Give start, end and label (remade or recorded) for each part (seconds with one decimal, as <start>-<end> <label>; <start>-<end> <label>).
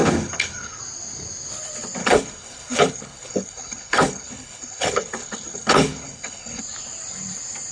0.0-0.8 remade; 0.8-2.0 recorded; 2.0-6.6 remade; 6.6-7.7 recorded